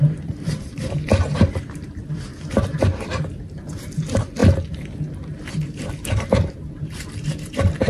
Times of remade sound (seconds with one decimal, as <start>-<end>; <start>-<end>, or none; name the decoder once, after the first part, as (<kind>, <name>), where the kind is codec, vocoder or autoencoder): 0.0-2.3 (vocoder, BigVGAN v2); 2.8-7.9